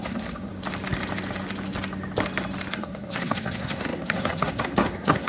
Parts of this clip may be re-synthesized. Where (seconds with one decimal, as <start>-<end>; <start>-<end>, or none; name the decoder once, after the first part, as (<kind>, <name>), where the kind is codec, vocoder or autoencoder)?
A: 0.0-0.5 (codec, SNAC); 2.7-5.3